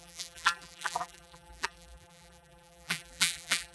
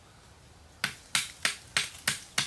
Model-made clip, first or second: first